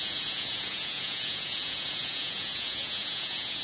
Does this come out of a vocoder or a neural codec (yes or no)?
yes